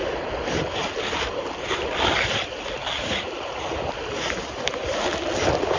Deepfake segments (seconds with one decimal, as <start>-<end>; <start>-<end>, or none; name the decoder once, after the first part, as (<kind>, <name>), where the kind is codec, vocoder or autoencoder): none